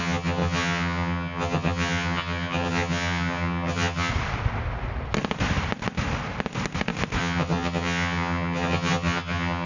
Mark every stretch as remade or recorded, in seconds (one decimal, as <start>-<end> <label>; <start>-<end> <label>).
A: 0.0-4.1 remade; 4.1-7.2 recorded; 7.2-9.7 remade